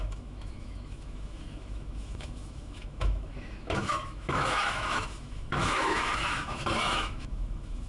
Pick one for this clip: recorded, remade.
remade